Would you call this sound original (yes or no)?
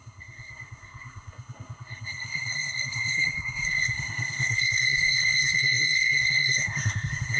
no